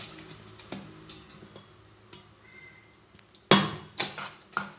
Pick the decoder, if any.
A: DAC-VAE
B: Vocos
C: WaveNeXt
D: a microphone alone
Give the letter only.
D